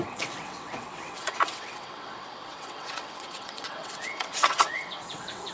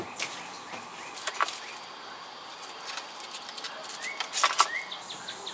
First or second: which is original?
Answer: second